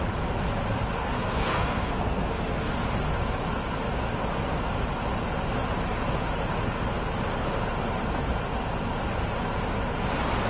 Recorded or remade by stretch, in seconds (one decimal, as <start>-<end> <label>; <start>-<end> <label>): 0.0-1.0 recorded; 1.0-2.7 remade; 2.7-10.5 recorded